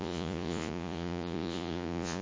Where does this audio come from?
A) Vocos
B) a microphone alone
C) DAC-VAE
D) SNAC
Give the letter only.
A